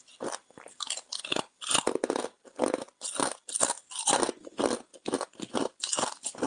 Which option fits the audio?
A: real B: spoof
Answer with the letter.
A